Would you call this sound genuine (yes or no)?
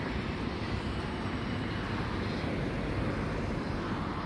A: yes